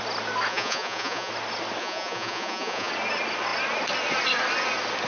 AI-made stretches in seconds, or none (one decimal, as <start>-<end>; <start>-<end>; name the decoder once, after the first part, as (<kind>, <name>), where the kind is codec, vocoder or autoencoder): 0.5-1.3 (vocoder, Vocos); 1.8-2.9